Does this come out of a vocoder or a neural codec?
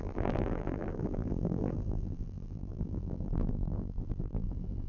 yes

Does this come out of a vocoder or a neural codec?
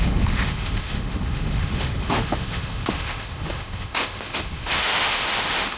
yes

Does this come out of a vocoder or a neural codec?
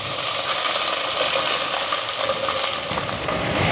no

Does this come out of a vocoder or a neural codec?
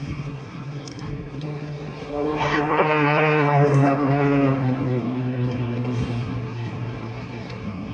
yes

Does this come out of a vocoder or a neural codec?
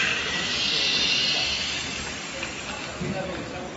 no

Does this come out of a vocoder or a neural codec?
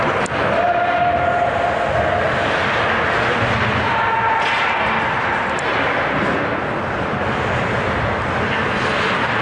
no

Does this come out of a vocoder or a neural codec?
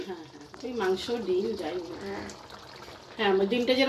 no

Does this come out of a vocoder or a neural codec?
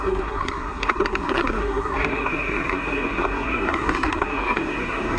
yes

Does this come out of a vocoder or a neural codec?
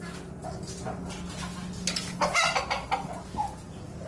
no